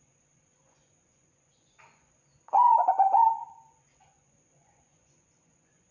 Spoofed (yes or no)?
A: yes